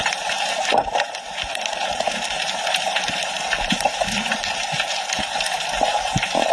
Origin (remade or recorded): remade